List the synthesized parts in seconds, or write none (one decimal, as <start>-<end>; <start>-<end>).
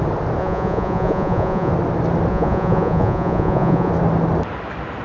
0.4-1.7; 2.3-3.9